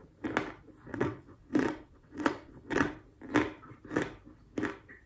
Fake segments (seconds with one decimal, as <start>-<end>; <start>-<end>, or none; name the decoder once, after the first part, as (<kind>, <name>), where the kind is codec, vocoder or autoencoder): 0.9-2.9 (vocoder, WaveNeXt)